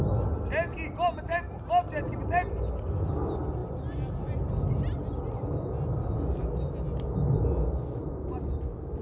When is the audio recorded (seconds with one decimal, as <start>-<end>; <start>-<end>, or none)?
0.0-9.0